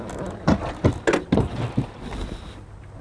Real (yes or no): yes